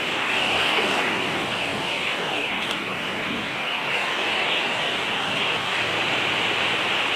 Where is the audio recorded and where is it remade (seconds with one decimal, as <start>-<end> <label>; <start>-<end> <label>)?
0.0-5.9 remade; 5.9-7.2 recorded